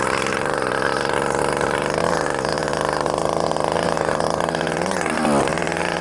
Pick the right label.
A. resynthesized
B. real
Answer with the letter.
B